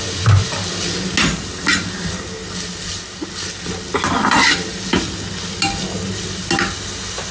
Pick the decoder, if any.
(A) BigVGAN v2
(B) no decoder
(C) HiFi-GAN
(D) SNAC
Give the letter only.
B